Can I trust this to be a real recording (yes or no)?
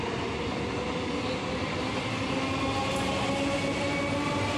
yes